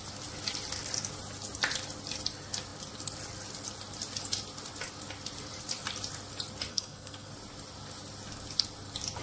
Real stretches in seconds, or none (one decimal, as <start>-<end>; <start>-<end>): 0.0-6.7; 7.3-9.2